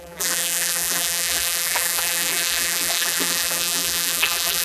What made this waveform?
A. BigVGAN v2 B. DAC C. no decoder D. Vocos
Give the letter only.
A